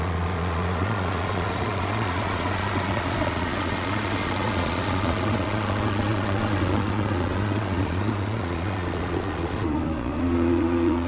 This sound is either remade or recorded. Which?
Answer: remade